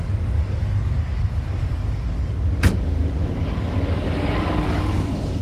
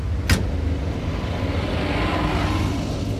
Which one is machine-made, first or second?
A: first